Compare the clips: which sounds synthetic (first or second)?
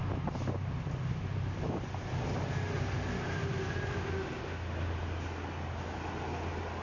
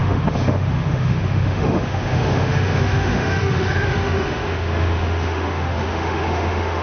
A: second